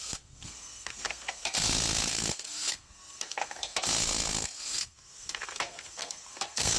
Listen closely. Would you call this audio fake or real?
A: fake